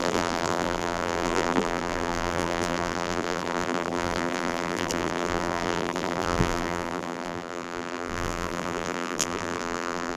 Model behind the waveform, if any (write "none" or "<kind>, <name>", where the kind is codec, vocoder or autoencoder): vocoder, BigVGAN v2